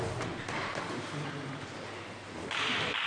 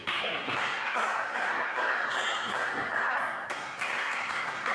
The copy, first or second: second